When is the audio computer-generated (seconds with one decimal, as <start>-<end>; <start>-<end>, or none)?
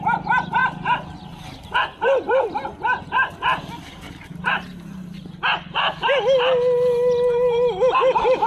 none